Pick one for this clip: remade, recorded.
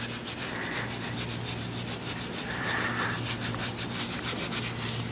recorded